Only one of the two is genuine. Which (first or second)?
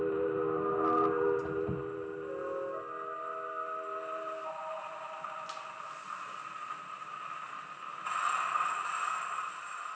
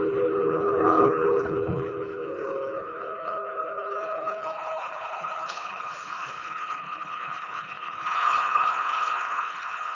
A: first